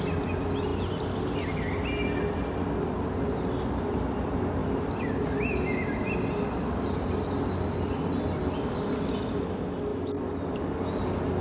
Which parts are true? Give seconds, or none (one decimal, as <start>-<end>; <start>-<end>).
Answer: 0.0-11.4